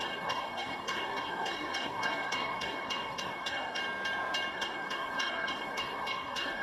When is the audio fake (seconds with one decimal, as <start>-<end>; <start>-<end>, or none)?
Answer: 0.0-3.8; 4.5-6.6